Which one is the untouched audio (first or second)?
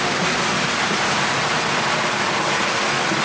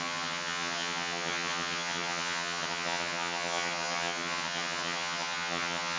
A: first